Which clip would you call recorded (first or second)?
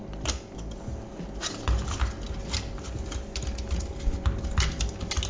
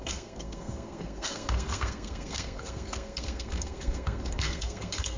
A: first